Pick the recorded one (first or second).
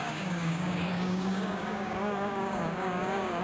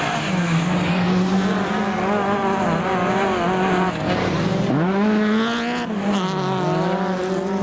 second